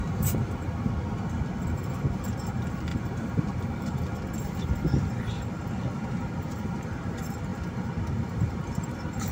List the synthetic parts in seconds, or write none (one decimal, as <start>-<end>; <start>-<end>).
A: 0.0-0.9; 2.9-3.9